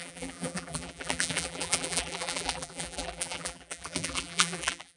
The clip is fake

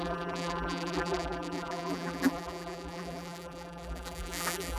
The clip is fake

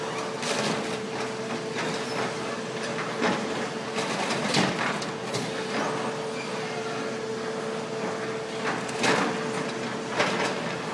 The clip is real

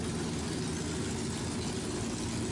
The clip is real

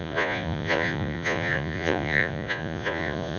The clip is fake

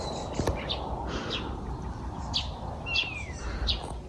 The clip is real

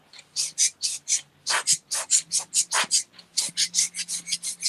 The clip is real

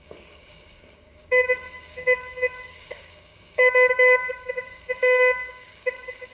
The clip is fake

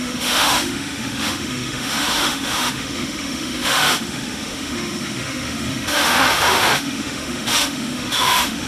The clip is fake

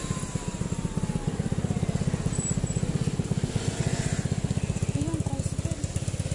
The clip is real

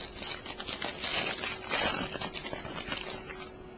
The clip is real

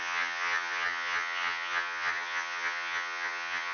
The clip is fake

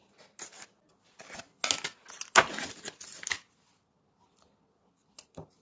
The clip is real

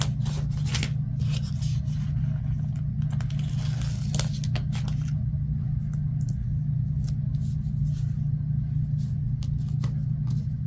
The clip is real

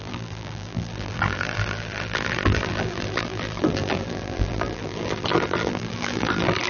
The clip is fake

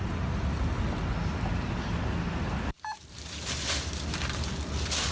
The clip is real